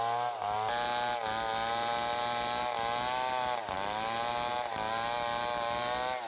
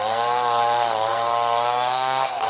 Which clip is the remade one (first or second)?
second